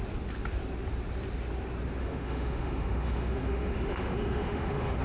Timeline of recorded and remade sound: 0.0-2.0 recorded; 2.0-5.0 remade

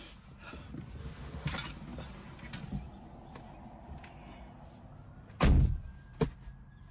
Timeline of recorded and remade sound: 0.0-1.0 recorded; 1.0-1.5 remade; 1.5-6.9 recorded

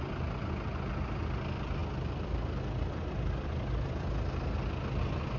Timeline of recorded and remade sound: 0.0-5.4 recorded

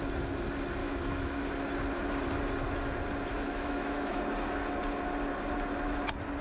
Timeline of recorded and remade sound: 0.0-0.8 recorded; 0.8-1.5 remade; 1.5-3.3 recorded; 3.3-4.2 remade; 4.2-6.4 recorded